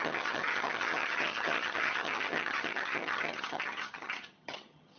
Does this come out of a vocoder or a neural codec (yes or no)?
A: yes